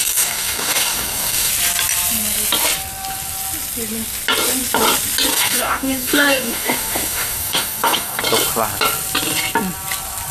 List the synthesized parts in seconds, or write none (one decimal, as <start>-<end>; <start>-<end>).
0.0-1.5; 5.3-8.2